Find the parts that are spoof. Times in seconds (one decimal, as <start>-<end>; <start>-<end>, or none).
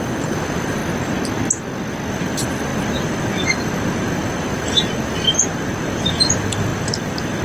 0.0-0.8; 2.1-7.4